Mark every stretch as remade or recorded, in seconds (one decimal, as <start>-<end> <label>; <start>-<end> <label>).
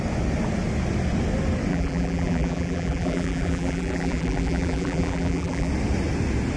0.0-1.7 recorded; 1.7-5.7 remade; 5.7-6.6 recorded